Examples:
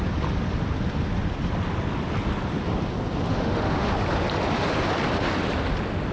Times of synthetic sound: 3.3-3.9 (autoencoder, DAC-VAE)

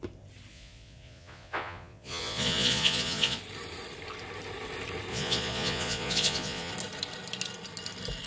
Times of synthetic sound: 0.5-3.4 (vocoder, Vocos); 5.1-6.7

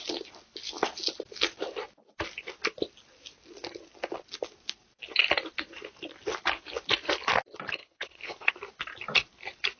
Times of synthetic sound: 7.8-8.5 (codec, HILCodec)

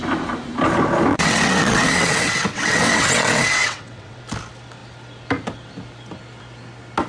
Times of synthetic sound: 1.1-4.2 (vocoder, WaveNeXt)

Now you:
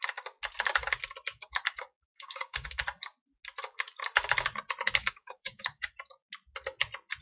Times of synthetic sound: 1.3-2.8 (codec, DAC); 5.0-5.9